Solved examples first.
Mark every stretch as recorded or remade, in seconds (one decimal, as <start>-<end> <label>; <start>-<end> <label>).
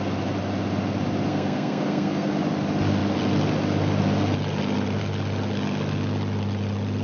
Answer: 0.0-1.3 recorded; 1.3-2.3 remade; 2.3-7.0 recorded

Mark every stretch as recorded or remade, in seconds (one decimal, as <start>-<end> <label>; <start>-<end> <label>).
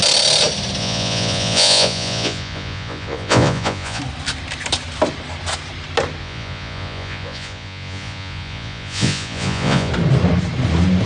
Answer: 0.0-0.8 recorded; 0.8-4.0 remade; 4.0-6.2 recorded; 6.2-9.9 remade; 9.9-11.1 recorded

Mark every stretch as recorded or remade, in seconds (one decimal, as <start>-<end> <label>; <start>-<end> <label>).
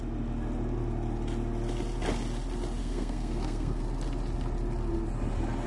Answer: 0.0-2.8 recorded; 2.8-3.8 remade; 3.8-5.7 recorded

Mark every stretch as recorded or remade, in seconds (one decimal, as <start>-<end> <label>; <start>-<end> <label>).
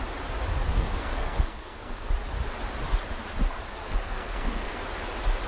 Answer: 0.0-0.7 recorded; 0.7-2.1 remade; 2.1-3.7 recorded; 3.7-4.8 remade; 4.8-5.5 recorded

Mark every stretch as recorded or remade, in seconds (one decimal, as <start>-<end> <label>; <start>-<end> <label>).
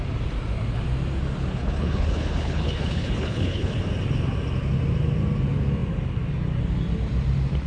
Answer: 0.0-1.5 recorded; 1.5-3.8 remade; 3.8-7.7 recorded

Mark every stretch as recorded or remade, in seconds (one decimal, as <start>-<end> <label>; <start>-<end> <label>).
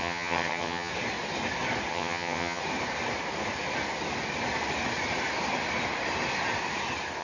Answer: 0.0-0.9 remade; 0.9-1.9 recorded; 1.9-2.6 remade; 2.6-7.2 recorded